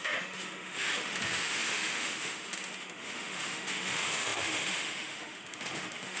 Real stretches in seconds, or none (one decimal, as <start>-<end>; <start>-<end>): none